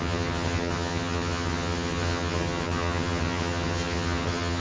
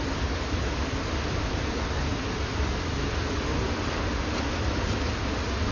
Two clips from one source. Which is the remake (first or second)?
first